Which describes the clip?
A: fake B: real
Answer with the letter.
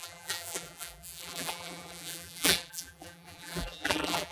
A